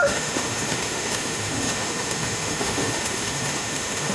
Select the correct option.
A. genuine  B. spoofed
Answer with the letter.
B